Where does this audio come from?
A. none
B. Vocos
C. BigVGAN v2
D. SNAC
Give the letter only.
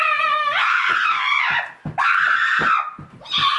A